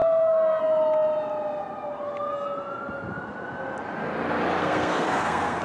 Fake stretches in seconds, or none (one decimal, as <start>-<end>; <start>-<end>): 0.0-0.6; 4.6-5.6